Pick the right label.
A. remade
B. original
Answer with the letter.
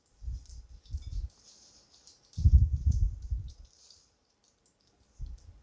A